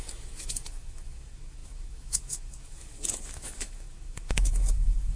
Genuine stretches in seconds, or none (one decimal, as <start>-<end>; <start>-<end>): none